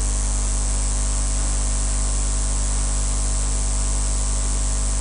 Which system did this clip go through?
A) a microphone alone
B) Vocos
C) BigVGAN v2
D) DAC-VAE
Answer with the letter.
A